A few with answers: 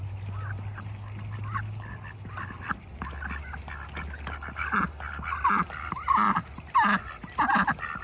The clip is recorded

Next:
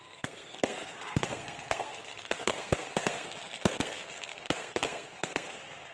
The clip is remade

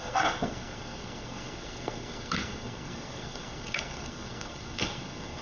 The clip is remade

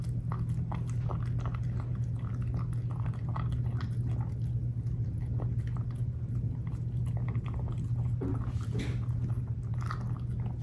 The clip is recorded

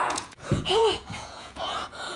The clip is remade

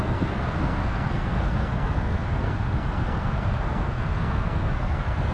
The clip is remade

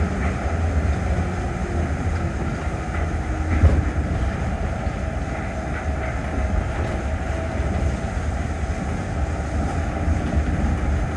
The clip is recorded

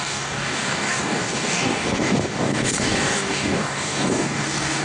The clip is remade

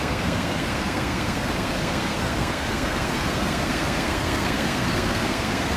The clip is remade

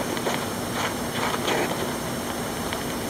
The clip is recorded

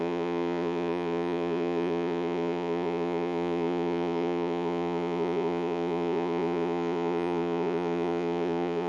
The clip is remade